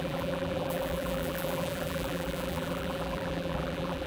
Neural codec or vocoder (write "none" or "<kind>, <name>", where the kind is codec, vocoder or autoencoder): vocoder, BigVGAN v2